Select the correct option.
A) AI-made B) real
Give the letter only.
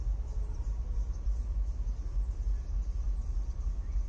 A